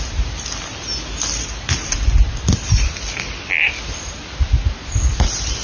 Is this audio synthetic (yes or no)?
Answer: no